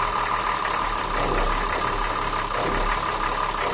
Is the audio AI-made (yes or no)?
no